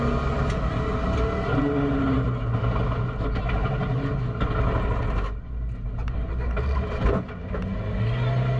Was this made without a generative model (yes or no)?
yes